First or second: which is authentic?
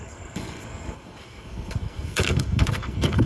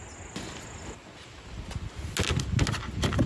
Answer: second